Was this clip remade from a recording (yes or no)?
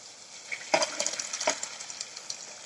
no